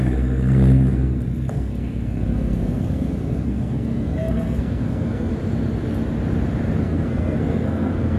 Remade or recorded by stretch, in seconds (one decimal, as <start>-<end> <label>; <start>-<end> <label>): 0.0-5.3 remade; 5.3-6.8 recorded; 6.8-8.2 remade